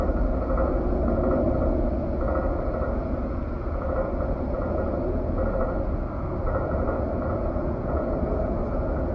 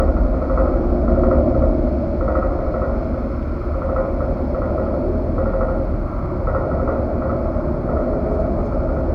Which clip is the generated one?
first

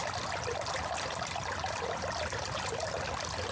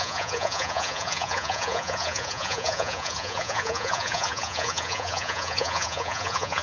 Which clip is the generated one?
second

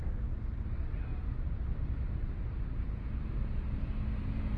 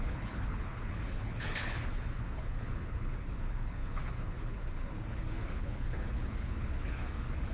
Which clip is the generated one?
second